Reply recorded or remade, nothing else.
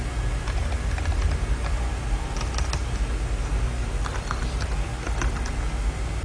recorded